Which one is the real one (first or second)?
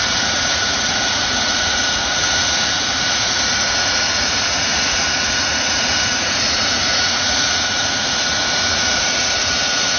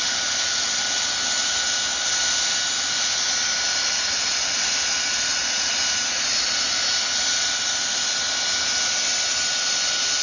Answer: second